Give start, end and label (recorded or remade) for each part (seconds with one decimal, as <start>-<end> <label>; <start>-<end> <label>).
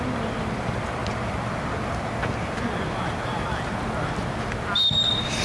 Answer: 0.0-5.4 recorded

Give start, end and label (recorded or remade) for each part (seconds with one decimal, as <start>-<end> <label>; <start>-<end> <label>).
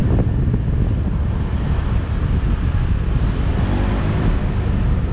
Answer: 0.0-5.1 recorded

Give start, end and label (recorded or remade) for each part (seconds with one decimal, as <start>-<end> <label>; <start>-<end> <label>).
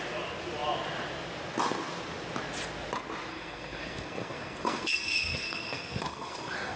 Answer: 0.0-3.3 recorded; 3.3-6.8 remade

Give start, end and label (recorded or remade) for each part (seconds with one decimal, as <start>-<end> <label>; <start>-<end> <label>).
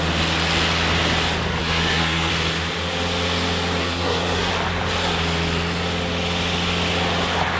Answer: 0.0-1.6 recorded; 1.6-2.3 remade; 2.3-3.8 recorded; 3.8-4.5 remade; 4.5-7.6 recorded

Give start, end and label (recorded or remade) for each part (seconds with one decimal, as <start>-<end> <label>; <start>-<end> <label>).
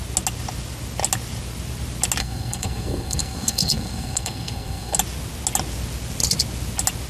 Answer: 0.0-2.2 recorded; 2.2-5.0 remade; 5.0-7.1 recorded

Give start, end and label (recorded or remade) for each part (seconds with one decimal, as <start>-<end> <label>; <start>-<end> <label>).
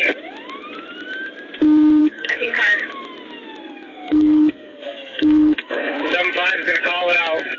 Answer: 0.0-2.0 recorded; 2.0-2.6 remade; 2.6-3.6 recorded; 3.6-6.0 remade; 6.0-7.6 recorded